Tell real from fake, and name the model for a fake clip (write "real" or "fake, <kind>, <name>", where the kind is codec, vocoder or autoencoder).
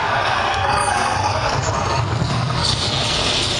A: fake, codec, SNAC